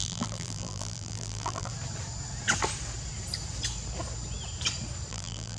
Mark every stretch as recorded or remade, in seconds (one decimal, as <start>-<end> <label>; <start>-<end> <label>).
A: 0.0-1.7 remade; 1.7-5.1 recorded; 5.1-5.6 remade